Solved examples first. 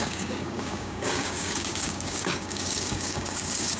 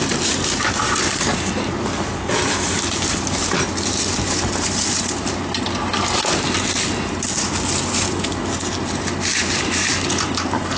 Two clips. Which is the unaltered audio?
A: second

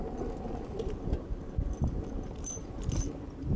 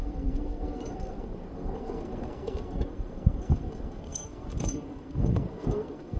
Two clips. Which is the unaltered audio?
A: first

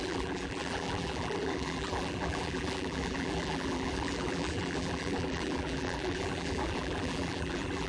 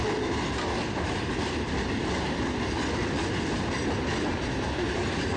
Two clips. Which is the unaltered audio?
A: second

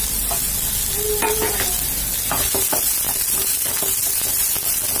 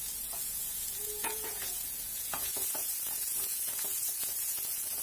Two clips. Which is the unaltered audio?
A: first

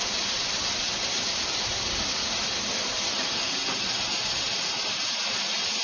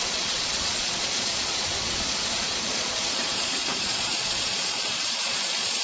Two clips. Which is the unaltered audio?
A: first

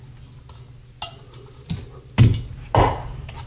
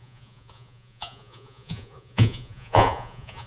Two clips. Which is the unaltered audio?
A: first